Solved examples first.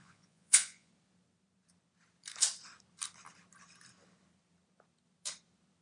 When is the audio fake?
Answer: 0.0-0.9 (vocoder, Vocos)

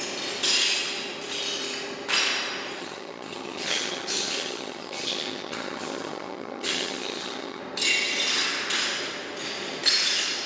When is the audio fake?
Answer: 2.8-7.6 (vocoder, HiFi-GAN)

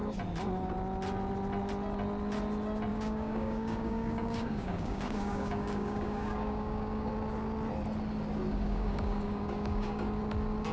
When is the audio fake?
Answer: 2.9-7.1 (codec, DAC); 8.5-10.2

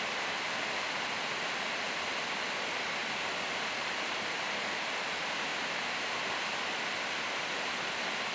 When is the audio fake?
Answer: none

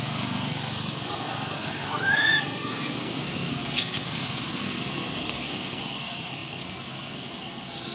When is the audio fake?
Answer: 0.0-7.9 (codec, SNAC)

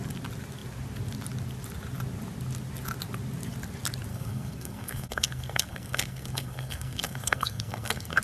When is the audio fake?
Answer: 4.1-8.2 (codec, SNAC)

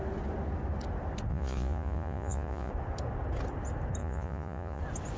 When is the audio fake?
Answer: 1.3-2.7 (vocoder, Vocos); 4.0-4.8